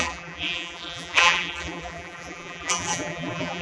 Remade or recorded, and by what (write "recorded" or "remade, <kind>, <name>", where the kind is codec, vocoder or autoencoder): remade, vocoder, BigVGAN v2